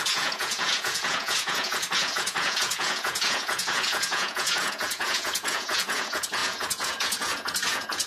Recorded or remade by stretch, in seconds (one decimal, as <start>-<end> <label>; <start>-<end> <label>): 0.0-8.1 remade